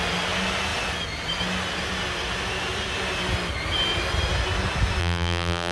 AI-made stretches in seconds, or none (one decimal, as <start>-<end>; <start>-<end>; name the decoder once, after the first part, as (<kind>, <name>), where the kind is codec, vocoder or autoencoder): 5.0-5.7 (vocoder, BigVGAN v2)